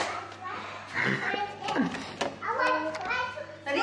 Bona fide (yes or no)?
yes